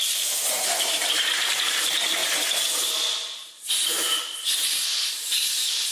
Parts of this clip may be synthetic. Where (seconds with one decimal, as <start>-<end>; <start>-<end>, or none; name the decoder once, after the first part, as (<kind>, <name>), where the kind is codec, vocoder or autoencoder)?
0.0-2.2 (vocoder, BigVGAN v2); 5.1-5.9